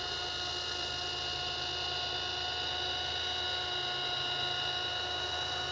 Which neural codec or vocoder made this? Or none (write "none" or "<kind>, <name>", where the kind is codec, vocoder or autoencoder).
none